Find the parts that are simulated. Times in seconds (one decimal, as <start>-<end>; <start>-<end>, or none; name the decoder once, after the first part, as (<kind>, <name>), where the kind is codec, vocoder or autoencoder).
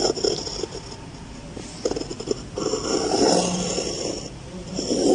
none